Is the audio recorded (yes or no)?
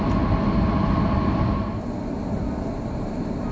yes